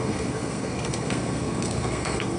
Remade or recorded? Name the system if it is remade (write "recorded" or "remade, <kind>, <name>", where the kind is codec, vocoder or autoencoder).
remade, codec, SNAC